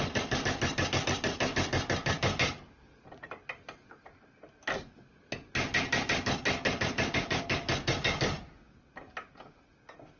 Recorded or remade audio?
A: recorded